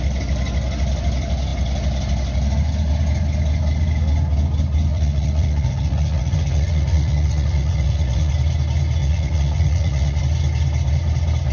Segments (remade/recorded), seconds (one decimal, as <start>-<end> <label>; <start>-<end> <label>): 0.0-4.9 recorded; 4.9-8.3 remade; 8.3-9.0 recorded; 9.0-10.2 remade; 10.2-11.5 recorded